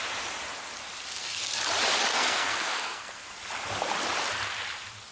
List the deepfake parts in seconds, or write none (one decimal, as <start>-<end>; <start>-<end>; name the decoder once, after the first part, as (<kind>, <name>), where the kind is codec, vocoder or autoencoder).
1.1-1.6 (codec, SNAC); 2.1-3.3